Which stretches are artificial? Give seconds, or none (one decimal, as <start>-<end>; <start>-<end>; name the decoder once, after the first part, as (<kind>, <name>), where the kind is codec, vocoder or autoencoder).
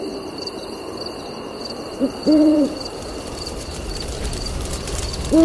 0.0-5.4 (vocoder, BigVGAN v2)